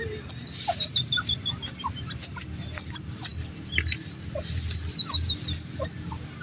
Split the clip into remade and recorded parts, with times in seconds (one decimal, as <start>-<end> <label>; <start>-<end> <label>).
0.0-6.4 recorded